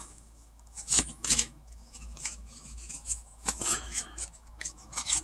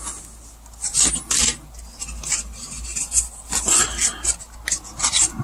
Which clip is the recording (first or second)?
second